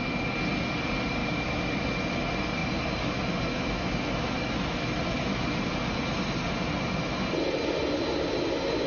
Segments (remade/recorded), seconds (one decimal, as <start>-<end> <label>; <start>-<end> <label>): 0.0-1.2 recorded; 1.2-1.7 remade; 1.7-2.6 recorded; 2.6-5.7 remade; 5.7-8.9 recorded